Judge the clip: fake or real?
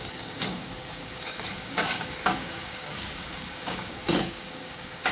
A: fake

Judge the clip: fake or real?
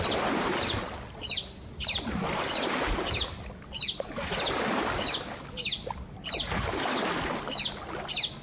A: real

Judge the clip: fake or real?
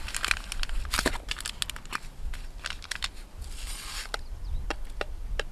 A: real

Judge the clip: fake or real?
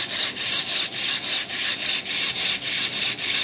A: real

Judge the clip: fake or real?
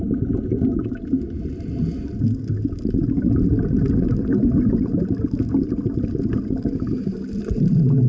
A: real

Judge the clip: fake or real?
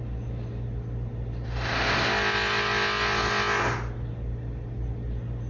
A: real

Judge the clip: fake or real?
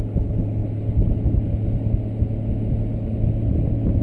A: real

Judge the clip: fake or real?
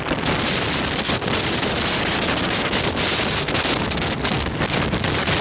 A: real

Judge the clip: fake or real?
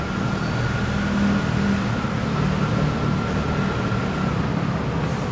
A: real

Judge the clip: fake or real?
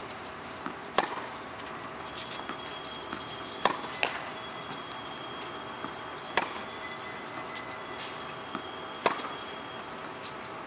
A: real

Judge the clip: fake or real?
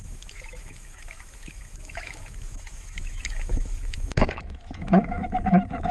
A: fake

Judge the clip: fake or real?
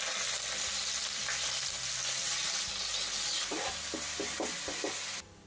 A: real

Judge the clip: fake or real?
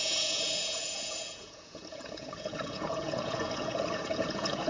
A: fake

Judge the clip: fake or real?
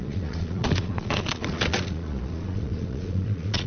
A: fake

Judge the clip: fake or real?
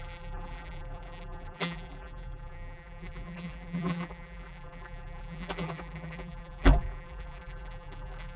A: fake